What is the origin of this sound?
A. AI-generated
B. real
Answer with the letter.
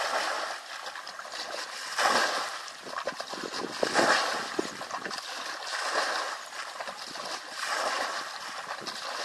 B